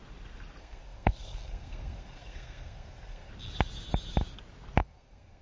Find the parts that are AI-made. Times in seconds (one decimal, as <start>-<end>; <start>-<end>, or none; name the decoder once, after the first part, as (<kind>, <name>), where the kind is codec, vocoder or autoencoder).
0.6-3.3 (codec, SNAC); 4.8-5.4